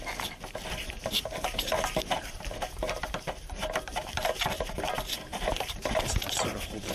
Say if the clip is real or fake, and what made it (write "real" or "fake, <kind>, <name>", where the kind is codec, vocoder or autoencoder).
fake, vocoder, BigVGAN v2